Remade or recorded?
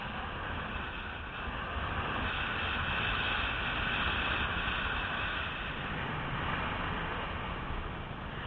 recorded